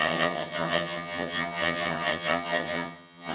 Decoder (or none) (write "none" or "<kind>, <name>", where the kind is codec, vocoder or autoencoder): vocoder, HiFi-GAN